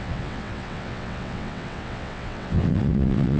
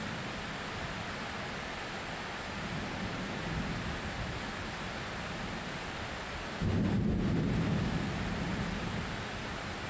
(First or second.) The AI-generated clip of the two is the first